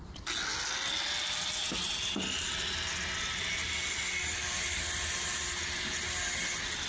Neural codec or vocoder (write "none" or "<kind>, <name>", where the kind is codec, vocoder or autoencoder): none